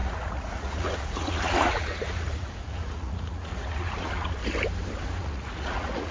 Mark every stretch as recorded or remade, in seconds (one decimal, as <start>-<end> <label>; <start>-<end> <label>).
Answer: 0.0-4.4 remade; 4.4-5.2 recorded; 5.2-6.1 remade